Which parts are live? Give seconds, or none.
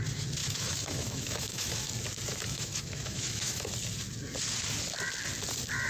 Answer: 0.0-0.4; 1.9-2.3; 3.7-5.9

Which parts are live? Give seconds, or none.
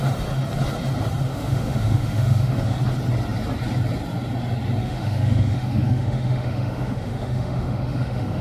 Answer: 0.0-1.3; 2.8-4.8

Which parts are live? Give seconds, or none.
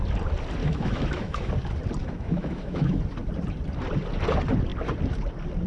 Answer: 0.0-0.6; 1.5-2.0; 3.0-5.7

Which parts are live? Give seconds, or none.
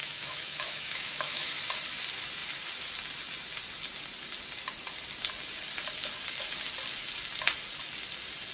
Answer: 1.5-8.5